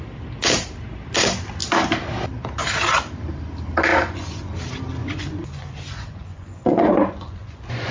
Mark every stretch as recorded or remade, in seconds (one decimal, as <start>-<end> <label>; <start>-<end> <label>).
0.0-3.9 recorded; 3.9-4.5 remade; 4.5-5.0 recorded; 5.0-7.9 remade